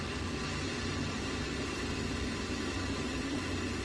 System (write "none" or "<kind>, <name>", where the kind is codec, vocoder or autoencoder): none